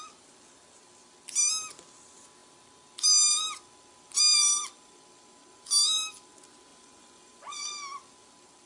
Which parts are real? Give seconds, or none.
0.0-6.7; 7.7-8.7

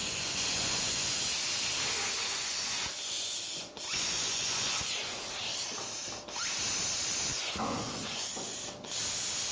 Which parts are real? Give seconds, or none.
1.3-2.2; 5.2-7.3; 8.6-9.5

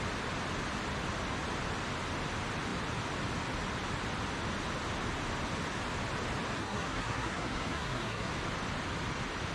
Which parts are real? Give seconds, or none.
0.0-6.6; 8.3-9.5

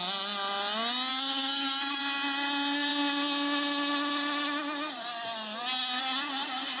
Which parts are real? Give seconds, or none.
0.0-1.1; 2.0-6.8

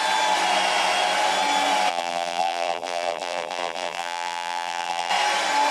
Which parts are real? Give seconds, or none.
0.0-1.9; 5.1-5.7

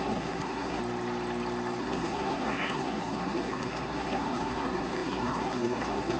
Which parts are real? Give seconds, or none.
0.8-1.8

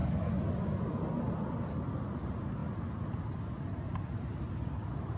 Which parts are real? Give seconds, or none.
0.0-2.6; 3.2-5.2

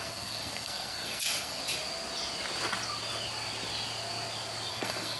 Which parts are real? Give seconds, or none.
1.6-4.7